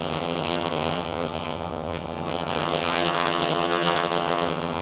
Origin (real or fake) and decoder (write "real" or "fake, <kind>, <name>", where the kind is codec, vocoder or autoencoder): fake, vocoder, HiFi-GAN